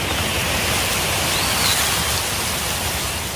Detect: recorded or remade recorded